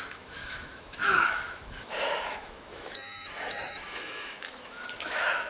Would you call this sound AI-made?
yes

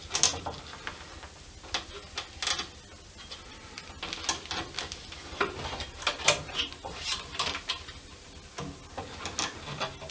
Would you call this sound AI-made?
no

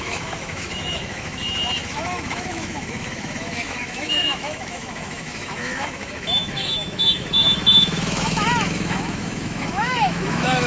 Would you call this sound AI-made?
yes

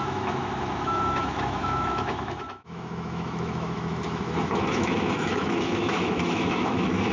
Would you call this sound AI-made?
yes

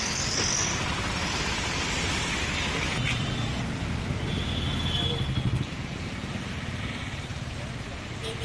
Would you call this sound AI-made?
no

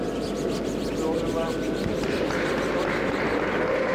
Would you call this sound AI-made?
no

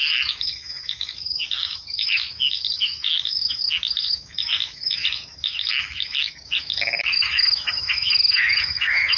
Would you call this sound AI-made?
yes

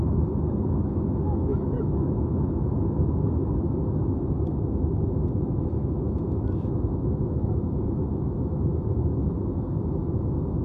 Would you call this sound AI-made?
yes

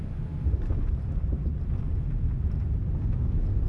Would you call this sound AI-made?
no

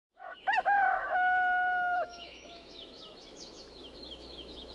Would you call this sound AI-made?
yes